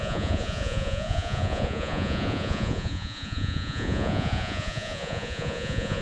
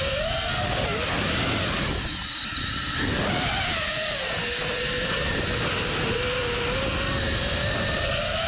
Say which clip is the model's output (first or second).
first